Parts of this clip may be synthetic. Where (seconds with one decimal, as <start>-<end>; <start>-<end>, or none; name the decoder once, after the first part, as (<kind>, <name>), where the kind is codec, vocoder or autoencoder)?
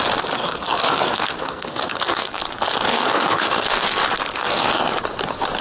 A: 0.4-2.4 (codec, SNAC); 2.9-4.0; 4.4-4.9